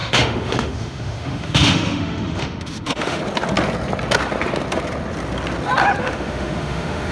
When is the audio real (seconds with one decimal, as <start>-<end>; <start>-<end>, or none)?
3.2-6.0